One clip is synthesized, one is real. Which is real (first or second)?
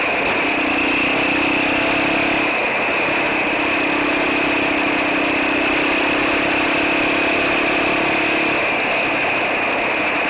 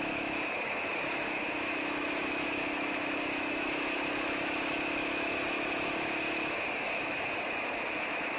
first